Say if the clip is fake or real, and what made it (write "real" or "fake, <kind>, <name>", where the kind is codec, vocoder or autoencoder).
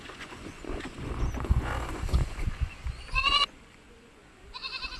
fake, vocoder, Vocos